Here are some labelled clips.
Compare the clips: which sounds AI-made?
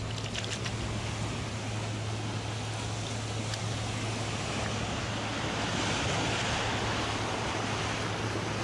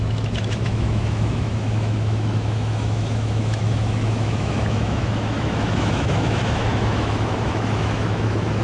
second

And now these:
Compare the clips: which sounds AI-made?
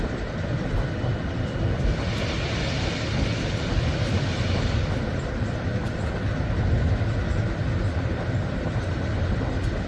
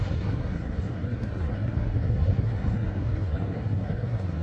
second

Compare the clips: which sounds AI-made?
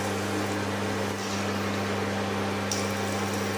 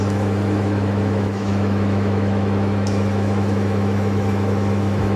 second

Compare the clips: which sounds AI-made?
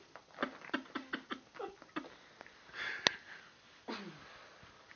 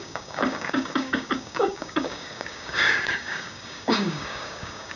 second